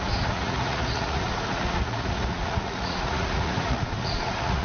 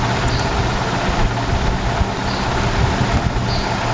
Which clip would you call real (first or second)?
second